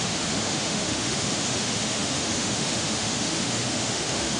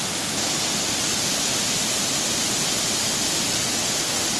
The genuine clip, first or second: second